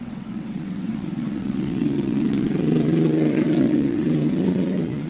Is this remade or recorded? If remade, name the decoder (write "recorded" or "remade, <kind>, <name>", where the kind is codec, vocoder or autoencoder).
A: remade, vocoder, WaveNeXt